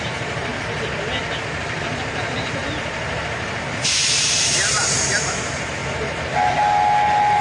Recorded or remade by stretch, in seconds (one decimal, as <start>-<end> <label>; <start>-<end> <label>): 0.0-0.5 remade; 0.5-1.6 recorded; 1.6-7.4 remade